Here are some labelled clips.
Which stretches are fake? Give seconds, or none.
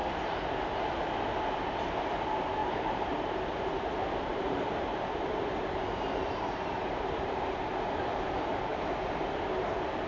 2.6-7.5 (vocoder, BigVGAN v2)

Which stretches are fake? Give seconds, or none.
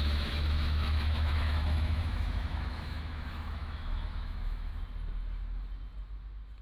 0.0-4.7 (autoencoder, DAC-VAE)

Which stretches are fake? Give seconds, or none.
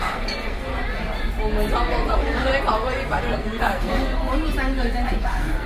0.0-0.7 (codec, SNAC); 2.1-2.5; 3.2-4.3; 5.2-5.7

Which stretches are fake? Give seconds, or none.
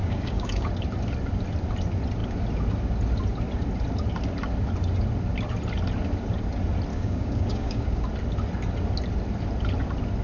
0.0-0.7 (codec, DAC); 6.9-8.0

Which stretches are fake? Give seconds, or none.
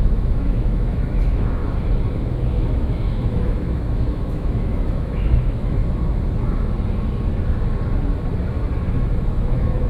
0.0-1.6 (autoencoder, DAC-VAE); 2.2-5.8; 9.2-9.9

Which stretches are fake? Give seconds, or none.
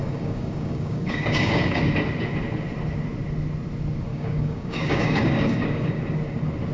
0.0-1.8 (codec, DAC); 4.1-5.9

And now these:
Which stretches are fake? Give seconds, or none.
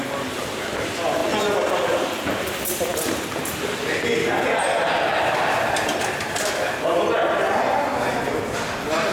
none